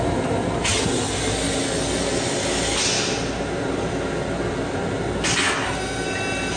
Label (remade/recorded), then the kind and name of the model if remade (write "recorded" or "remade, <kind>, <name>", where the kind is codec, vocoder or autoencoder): recorded